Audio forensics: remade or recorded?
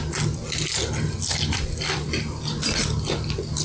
recorded